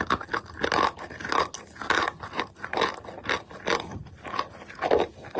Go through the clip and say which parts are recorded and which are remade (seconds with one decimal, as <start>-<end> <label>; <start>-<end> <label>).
0.0-5.4 recorded

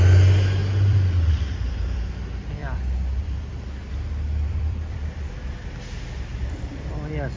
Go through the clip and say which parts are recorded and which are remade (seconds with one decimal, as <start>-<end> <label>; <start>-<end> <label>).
0.0-0.6 recorded; 0.6-2.1 remade; 2.1-2.6 recorded; 2.6-5.3 remade; 5.3-6.3 recorded; 6.3-7.4 remade

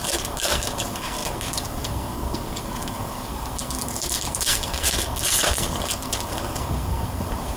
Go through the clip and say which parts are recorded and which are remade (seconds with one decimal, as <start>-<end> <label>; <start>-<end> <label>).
0.0-7.6 remade